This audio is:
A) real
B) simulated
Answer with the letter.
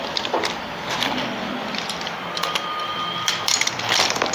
B